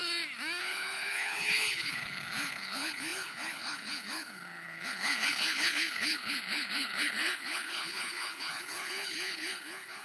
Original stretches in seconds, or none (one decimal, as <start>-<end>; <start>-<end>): 0.0-0.6